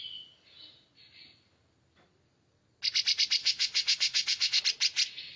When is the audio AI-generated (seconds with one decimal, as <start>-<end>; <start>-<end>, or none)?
3.4-4.6